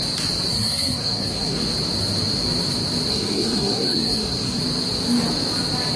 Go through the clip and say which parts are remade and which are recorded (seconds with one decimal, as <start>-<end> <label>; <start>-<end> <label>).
0.0-0.5 recorded; 0.5-1.6 remade; 1.6-3.1 recorded; 3.1-4.6 remade; 4.6-6.0 recorded